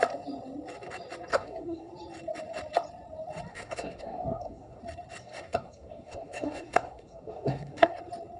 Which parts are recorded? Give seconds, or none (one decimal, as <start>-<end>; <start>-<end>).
0.0-1.3; 1.9-3.5; 4.8-5.2; 8.0-8.4